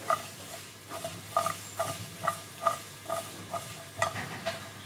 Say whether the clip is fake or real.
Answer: fake